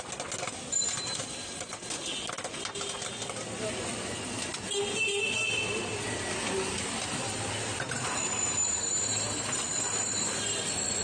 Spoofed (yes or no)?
no